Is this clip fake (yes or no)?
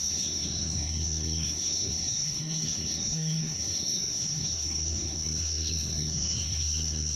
yes